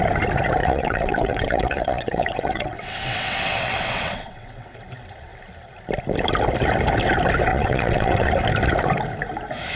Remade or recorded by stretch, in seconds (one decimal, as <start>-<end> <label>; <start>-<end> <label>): 0.0-0.6 recorded; 0.6-4.8 remade; 4.8-7.5 recorded; 7.5-8.3 remade; 8.3-9.8 recorded